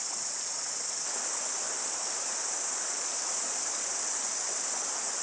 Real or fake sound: real